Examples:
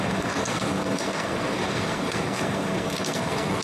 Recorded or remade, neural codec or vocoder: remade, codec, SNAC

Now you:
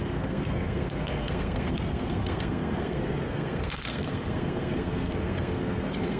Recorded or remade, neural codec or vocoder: remade, codec, SNAC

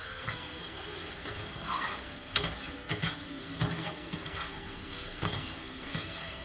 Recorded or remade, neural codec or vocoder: remade, codec, SNAC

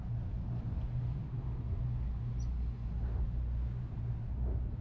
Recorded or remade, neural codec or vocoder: recorded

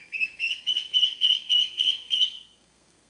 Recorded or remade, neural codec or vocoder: remade, codec, SNAC